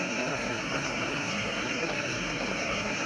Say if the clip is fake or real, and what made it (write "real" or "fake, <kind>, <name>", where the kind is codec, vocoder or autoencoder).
fake, codec, SNAC